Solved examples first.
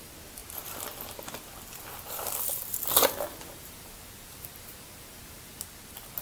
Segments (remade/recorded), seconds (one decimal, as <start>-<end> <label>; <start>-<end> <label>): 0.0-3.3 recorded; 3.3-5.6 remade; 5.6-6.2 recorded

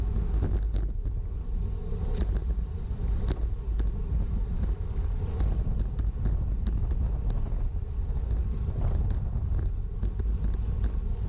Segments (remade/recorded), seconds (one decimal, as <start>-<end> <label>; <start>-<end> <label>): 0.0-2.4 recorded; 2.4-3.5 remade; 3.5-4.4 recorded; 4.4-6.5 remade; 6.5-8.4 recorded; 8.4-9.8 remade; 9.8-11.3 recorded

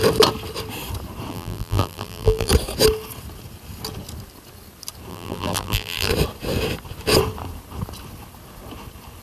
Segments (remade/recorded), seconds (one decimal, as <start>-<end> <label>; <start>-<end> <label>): 0.0-1.3 recorded; 1.3-2.5 remade; 2.5-5.1 recorded; 5.1-6.1 remade; 6.1-9.2 recorded